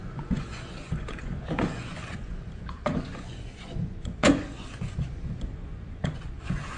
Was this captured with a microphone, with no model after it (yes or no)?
no